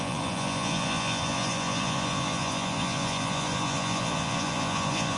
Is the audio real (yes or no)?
no